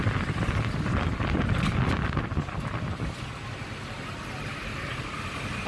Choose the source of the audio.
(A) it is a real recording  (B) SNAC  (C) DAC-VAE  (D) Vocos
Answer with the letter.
A